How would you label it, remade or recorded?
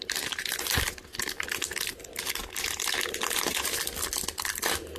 recorded